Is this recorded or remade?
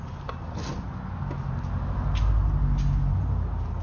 recorded